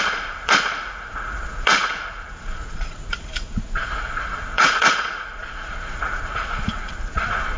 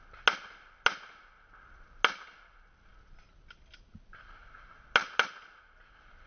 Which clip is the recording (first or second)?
second